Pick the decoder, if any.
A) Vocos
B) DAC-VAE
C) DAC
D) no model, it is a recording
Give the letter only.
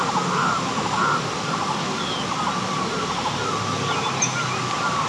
D